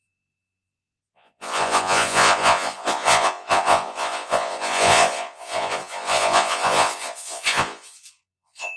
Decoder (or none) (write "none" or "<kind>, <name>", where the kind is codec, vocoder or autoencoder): vocoder, Vocos